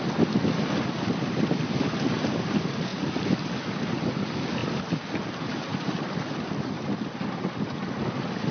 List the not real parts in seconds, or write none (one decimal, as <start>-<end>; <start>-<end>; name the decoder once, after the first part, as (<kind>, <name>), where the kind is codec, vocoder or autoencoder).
none